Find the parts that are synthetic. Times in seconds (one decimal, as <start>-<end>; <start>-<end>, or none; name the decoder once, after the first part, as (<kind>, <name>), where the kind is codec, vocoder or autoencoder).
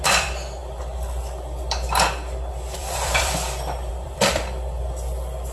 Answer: 0.0-5.5 (vocoder, BigVGAN v2)